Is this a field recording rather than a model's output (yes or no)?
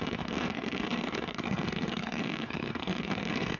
no